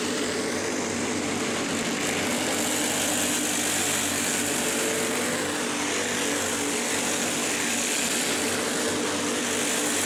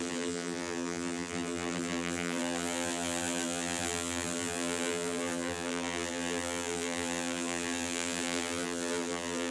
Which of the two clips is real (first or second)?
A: first